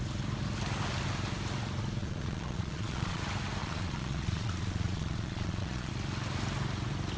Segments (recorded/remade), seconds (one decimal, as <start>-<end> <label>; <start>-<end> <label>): 0.0-2.0 recorded; 2.0-3.2 remade; 3.2-3.6 recorded; 3.6-5.9 remade; 5.9-7.2 recorded

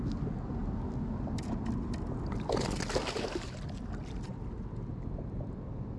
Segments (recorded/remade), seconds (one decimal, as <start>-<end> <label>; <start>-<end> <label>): 0.0-6.0 recorded

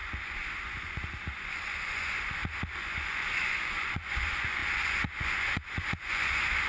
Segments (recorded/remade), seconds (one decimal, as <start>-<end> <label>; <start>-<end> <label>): 0.0-6.7 remade

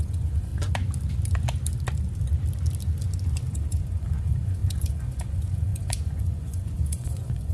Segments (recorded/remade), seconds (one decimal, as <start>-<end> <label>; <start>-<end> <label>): 0.0-0.5 remade; 0.5-3.5 recorded; 3.5-7.5 remade

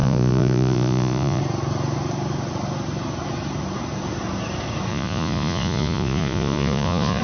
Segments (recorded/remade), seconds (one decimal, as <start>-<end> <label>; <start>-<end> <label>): 0.0-1.4 remade; 1.4-4.9 recorded; 4.9-7.2 remade

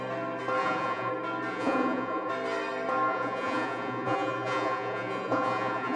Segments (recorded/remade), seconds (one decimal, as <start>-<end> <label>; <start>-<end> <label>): 0.0-0.6 recorded; 0.6-1.1 remade; 1.1-1.5 recorded; 1.5-2.3 remade; 2.3-3.1 recorded; 3.1-6.0 remade